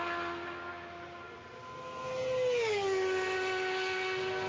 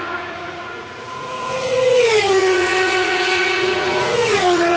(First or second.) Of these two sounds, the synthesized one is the second